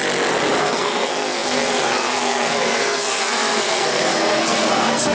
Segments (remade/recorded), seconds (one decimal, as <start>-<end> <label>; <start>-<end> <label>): 0.0-0.6 recorded; 0.6-5.1 remade